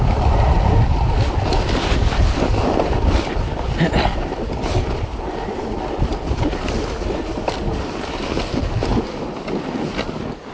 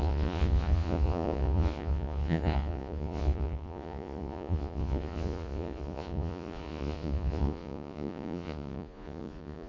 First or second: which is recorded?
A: first